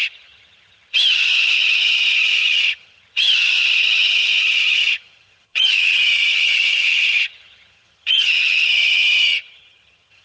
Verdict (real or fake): fake